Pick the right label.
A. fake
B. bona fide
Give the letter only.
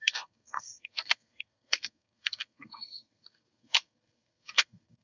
A